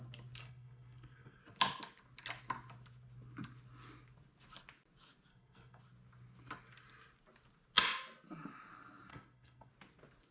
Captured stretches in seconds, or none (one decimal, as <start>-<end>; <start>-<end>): 0.0-0.4; 1.4-5.3; 5.8-9.1; 9.7-10.3